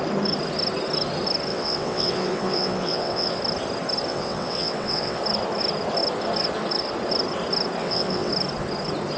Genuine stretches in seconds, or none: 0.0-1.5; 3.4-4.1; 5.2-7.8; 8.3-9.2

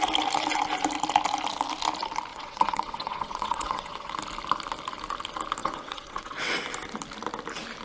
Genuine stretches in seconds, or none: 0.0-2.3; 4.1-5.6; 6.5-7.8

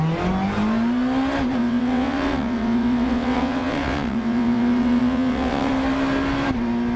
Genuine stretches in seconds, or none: 0.0-1.6; 5.7-7.0